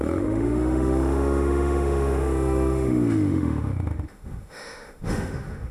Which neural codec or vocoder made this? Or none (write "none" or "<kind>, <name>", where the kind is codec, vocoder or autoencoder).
autoencoder, DAC-VAE